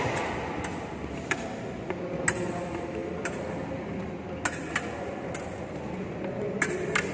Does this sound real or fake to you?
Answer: real